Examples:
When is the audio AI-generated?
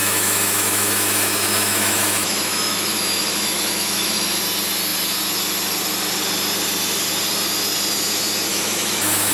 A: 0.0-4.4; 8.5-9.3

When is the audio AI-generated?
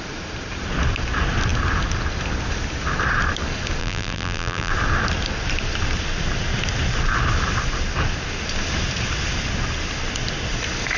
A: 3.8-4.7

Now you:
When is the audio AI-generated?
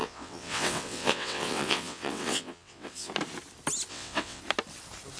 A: 0.0-3.1; 3.9-4.4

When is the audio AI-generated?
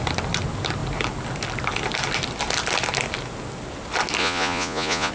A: 4.2-5.1